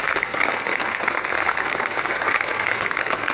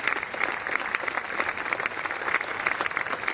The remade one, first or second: first